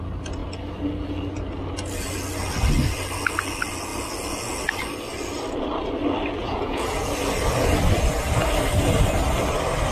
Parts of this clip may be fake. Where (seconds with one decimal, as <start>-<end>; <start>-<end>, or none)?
6.4-7.1